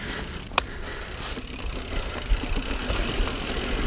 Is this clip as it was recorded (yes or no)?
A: yes